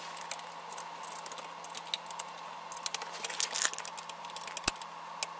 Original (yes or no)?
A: yes